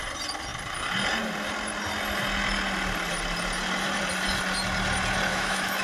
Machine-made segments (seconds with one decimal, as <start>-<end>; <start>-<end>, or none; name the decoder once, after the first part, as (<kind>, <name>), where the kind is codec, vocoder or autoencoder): 5.3-5.8 (autoencoder, DAC-VAE)

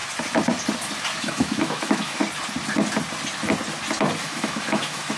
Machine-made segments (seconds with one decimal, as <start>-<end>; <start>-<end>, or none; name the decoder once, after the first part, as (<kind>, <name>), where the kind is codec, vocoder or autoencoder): 1.2-2.2 (autoencoder, DAC-VAE); 4.2-5.2

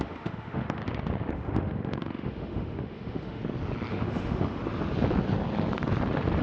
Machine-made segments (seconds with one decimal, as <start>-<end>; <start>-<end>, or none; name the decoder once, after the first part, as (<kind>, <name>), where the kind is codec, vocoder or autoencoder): 0.0-0.8 (autoencoder, DAC-VAE); 1.3-3.4; 3.9-4.6

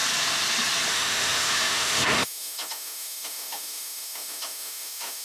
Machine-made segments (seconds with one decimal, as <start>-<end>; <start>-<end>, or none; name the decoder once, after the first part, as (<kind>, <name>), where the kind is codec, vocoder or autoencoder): 0.9-5.2 (autoencoder, DAC-VAE)

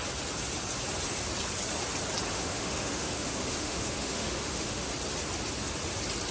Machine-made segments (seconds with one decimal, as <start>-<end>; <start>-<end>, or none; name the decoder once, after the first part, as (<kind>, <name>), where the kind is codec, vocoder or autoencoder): 2.3-4.9 (autoencoder, DAC-VAE)

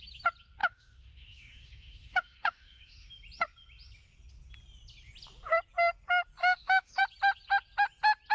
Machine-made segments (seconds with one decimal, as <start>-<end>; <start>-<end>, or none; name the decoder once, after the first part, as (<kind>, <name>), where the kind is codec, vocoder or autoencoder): 0.6-3.1 (autoencoder, DAC-VAE); 6.4-7.0

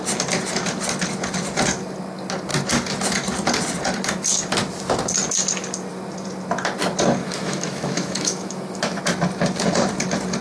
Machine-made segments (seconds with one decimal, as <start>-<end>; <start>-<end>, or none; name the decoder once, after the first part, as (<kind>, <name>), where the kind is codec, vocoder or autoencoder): 7.2-9.0 (autoencoder, DAC-VAE)

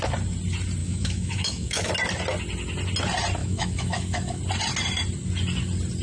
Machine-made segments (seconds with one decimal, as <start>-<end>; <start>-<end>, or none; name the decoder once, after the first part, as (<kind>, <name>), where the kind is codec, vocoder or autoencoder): 0.8-1.9 (autoencoder, DAC-VAE); 3.4-4.4